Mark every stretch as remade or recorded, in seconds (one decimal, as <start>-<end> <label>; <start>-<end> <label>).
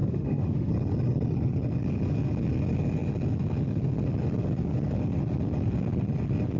0.0-0.7 remade; 0.7-6.6 recorded